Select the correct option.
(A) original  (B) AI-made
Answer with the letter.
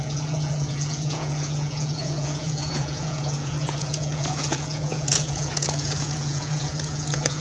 B